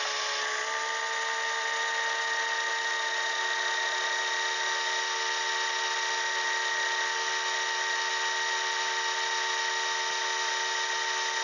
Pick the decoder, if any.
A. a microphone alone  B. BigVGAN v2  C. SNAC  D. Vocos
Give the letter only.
A